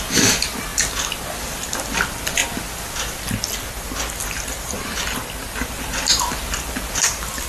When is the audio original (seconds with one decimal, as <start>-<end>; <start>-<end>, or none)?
0.7-1.9; 2.4-5.5